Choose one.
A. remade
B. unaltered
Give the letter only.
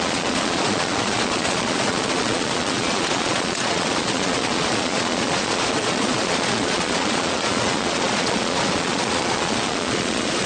A